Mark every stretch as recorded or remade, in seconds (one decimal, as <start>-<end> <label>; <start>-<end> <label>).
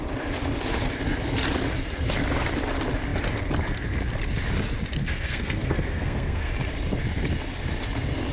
0.0-5.0 recorded; 5.0-6.5 remade; 6.5-8.3 recorded